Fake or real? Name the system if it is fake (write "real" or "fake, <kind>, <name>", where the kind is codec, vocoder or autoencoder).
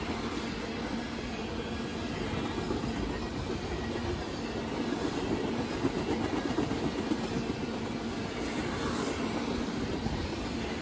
real